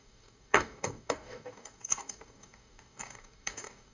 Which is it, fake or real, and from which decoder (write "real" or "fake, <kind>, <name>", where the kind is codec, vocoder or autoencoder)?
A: fake, codec, DAC